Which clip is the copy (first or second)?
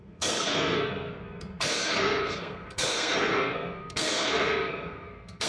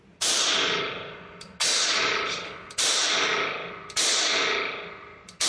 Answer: first